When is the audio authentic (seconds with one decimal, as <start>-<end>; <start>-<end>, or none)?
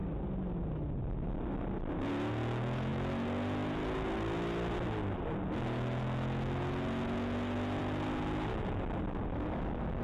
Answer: 0.0-10.0